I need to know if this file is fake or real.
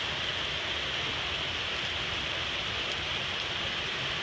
real